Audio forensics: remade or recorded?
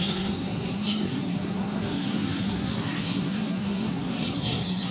remade